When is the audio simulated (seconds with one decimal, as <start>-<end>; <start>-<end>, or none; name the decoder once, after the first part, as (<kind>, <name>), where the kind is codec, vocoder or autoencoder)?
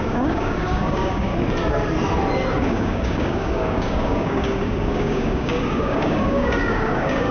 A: 0.0-1.3 (codec, DAC); 2.6-7.3